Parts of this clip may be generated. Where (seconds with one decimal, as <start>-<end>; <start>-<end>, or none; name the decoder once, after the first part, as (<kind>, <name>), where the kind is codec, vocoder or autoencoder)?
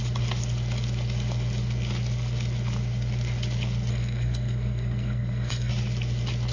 3.9-5.7 (codec, SNAC)